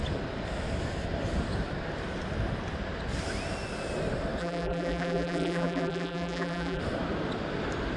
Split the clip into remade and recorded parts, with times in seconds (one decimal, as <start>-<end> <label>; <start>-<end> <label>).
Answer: 0.0-4.4 recorded; 4.4-6.8 remade; 6.8-8.0 recorded